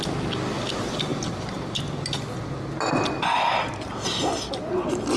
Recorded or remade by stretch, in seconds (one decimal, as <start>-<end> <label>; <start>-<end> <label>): 0.0-5.2 recorded